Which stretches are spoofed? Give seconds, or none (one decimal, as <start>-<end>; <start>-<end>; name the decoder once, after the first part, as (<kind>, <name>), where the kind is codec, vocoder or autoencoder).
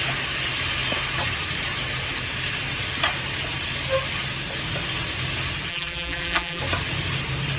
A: 5.7-6.6 (vocoder, BigVGAN v2)